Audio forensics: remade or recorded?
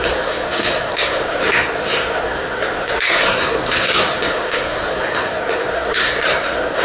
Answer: remade